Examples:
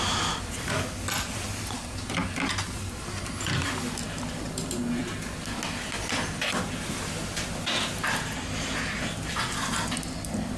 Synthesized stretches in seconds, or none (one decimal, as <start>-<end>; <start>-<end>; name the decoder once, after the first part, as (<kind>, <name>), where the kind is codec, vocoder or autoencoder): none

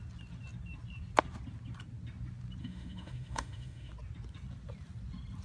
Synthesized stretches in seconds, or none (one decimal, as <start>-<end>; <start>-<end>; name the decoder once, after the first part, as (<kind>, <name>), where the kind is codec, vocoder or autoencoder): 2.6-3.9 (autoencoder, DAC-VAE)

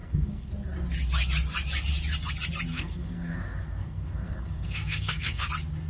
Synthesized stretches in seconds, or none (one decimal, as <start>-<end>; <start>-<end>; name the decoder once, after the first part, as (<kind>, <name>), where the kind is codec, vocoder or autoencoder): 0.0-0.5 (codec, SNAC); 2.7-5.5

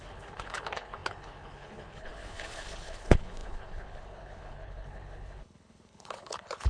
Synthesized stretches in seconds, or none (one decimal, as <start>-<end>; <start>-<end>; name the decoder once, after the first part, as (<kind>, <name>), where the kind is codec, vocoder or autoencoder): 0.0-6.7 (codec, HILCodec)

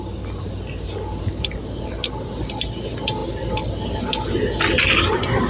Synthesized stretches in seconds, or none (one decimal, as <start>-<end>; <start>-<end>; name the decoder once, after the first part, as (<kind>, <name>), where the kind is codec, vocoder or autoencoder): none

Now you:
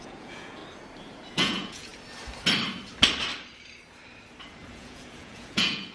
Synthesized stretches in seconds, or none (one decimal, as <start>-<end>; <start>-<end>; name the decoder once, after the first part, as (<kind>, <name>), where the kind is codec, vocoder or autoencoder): 0.0-0.6 (vocoder, Vocos); 1.3-1.9; 4.7-5.9